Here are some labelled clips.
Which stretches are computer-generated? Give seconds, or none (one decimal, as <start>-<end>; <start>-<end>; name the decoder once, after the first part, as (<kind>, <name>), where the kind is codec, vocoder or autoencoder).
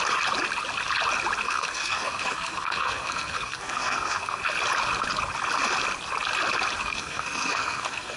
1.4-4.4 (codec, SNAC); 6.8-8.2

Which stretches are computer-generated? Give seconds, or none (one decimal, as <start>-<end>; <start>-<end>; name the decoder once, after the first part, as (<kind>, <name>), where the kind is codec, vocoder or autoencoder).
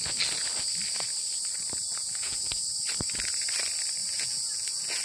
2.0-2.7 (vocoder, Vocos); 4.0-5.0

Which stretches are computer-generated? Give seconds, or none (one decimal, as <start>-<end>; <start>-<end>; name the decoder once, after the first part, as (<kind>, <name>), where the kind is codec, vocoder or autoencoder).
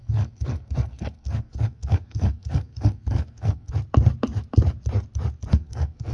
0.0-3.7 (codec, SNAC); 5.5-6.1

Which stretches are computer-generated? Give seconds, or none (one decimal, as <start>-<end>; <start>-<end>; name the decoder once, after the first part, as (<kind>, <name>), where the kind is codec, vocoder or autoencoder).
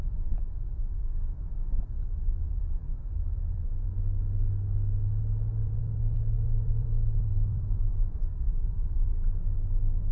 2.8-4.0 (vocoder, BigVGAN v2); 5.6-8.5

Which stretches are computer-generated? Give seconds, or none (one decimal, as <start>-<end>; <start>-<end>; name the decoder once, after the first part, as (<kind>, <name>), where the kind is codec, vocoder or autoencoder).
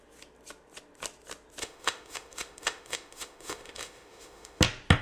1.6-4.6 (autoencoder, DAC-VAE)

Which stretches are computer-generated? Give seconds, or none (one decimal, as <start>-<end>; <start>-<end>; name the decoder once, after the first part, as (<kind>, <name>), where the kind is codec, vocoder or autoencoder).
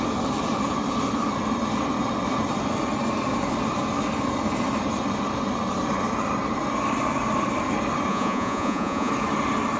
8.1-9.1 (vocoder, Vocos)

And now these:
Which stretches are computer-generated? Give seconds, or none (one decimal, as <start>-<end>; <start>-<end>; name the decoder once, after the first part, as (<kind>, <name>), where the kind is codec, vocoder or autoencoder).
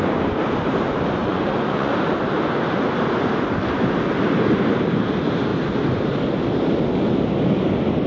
1.2-1.9 (vocoder, Vocos)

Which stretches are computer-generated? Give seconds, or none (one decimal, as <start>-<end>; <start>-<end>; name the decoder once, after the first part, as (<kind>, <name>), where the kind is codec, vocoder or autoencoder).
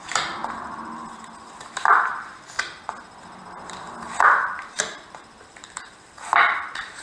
0.0-0.4 (vocoder, BigVGAN v2); 1.5-2.1; 4.2-7.0